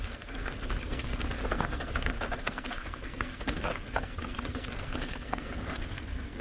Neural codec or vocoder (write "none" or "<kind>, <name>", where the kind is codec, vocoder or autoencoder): codec, SNAC